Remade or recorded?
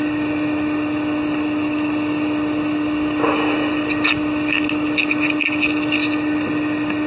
recorded